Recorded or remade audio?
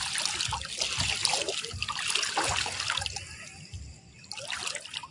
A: recorded